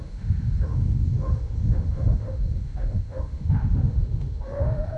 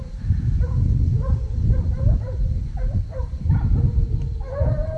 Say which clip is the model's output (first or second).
first